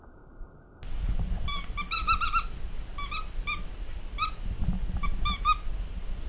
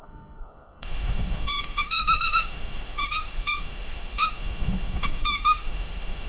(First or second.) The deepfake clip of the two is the second